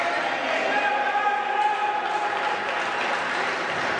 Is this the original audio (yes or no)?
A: yes